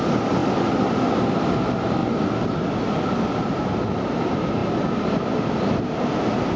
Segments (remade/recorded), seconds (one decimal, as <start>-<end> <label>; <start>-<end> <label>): 0.0-6.6 recorded